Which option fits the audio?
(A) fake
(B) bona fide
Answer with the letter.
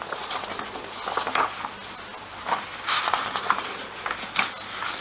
B